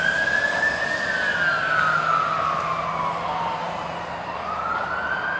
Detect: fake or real real